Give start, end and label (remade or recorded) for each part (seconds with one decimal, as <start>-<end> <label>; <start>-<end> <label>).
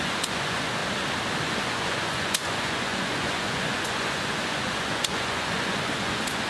0.0-0.8 remade; 0.8-1.5 recorded; 1.5-6.5 remade